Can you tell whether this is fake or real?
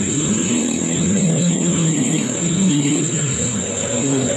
fake